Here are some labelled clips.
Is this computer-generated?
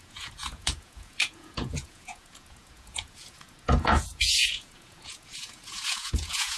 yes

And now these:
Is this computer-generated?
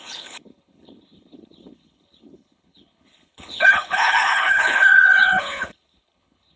yes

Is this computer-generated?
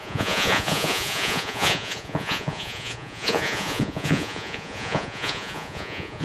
yes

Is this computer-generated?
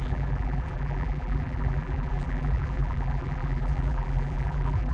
yes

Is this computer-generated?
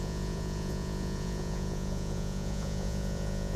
yes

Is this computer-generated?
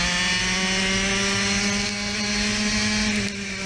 no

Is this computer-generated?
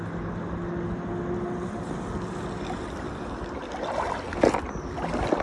no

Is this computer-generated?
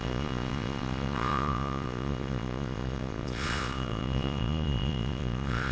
yes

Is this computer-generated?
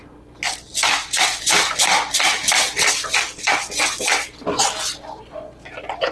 no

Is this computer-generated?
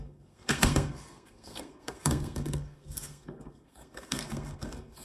yes